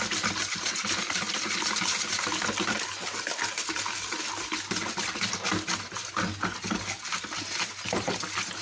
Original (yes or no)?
yes